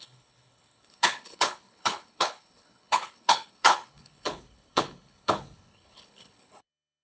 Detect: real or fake fake